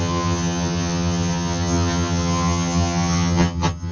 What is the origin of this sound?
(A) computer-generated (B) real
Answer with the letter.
A